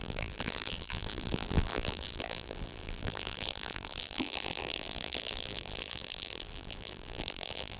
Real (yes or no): no